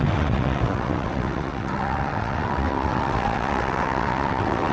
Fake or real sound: fake